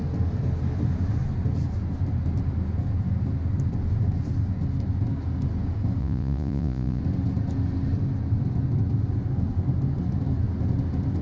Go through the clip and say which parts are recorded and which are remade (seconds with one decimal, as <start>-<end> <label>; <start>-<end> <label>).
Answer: 0.0-6.0 recorded; 6.0-7.0 remade; 7.0-11.2 recorded